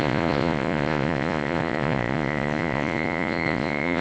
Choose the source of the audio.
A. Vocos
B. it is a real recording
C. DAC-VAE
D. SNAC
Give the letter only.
A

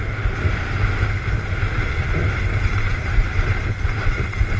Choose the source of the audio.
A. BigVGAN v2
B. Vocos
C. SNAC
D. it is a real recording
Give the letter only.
D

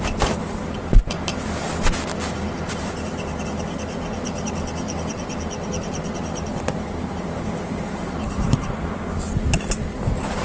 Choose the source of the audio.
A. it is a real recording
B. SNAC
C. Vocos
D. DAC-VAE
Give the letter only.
A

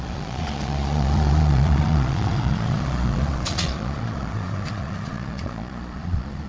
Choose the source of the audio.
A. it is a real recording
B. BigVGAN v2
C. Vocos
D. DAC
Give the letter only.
C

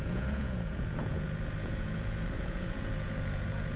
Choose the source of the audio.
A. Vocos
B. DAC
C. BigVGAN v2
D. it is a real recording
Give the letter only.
A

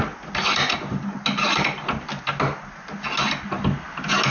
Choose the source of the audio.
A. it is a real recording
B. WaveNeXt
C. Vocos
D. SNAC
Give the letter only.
A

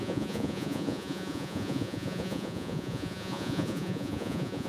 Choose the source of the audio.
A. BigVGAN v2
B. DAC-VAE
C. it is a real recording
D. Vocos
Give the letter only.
D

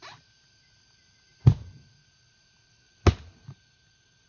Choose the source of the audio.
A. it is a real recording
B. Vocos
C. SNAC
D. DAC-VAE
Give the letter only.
A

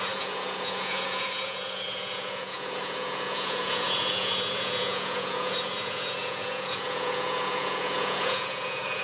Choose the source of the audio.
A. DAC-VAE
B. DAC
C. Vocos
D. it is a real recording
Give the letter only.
C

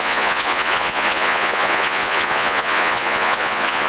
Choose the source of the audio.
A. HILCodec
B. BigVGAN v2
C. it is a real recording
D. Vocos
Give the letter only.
D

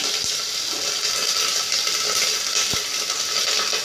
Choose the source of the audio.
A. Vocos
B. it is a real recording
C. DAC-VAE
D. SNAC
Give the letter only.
B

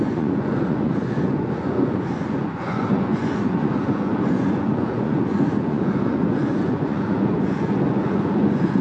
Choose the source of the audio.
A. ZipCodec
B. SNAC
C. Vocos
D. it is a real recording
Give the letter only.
C